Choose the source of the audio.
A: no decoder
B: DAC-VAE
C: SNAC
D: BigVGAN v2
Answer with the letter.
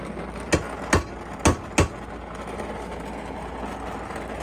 A